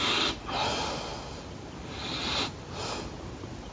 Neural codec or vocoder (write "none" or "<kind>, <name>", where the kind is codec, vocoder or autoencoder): none